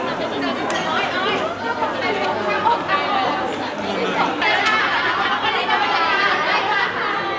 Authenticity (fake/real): real